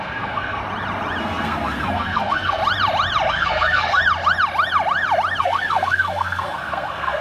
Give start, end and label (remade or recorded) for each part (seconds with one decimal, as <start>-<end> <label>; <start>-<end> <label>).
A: 0.0-0.6 remade; 0.6-1.2 recorded; 1.2-2.6 remade; 2.6-3.3 recorded; 3.3-4.0 remade; 4.0-5.4 recorded; 5.4-7.2 remade